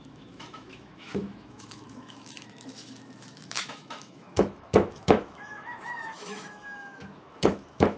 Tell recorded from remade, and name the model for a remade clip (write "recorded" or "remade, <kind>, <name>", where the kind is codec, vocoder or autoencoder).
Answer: remade, autoencoder, DAC-VAE